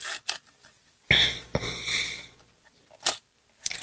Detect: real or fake real